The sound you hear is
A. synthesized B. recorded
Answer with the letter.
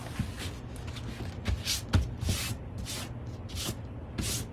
B